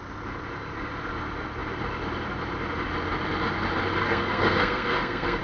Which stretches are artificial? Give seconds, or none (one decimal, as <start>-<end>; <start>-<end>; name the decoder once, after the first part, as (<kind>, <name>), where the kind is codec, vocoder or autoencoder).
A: 4.0-5.4 (codec, SNAC)